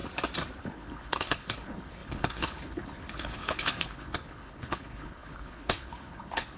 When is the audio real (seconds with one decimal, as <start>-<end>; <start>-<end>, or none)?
0.0-0.6